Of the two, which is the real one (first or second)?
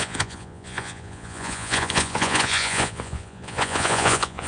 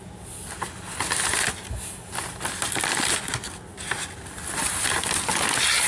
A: second